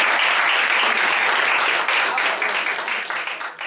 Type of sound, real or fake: real